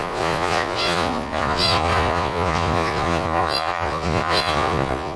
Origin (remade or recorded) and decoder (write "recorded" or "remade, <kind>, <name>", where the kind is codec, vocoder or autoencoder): remade, vocoder, Vocos